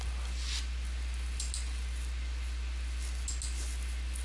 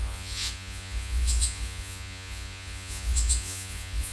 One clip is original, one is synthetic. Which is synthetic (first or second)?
second